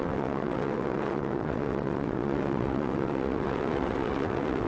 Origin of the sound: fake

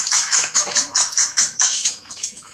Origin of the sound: fake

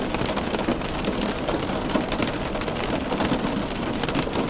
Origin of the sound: real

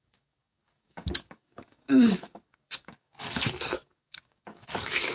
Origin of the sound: fake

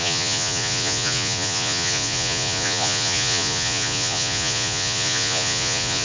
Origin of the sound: fake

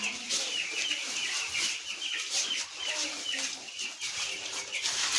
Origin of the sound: fake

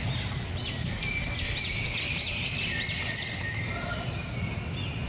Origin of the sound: real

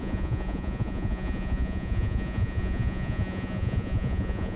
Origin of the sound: fake